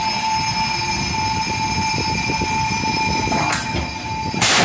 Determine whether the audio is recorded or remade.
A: recorded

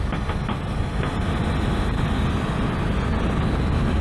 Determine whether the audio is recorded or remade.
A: recorded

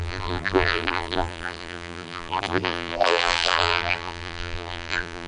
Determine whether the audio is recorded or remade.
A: remade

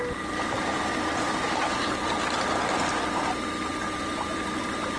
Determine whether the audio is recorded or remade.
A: recorded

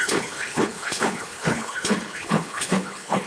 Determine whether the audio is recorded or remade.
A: remade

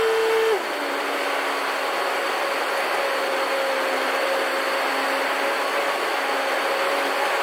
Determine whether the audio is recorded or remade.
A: recorded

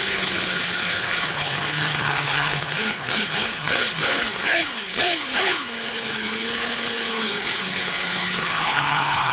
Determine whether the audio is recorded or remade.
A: remade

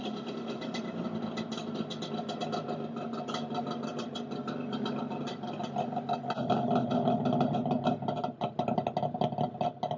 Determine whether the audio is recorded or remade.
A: recorded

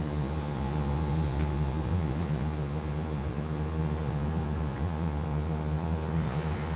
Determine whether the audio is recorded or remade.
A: remade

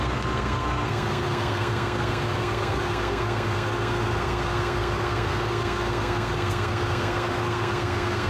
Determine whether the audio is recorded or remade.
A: remade